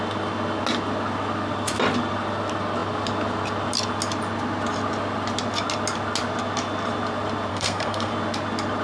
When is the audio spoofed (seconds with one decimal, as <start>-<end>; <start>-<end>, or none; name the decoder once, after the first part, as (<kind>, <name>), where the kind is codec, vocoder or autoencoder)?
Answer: 7.5-8.1 (codec, SNAC)